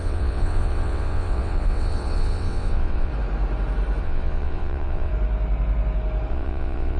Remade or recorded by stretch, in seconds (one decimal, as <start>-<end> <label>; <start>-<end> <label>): 0.0-3.1 remade; 3.1-4.0 recorded; 4.0-5.1 remade; 5.1-6.3 recorded; 6.3-7.0 remade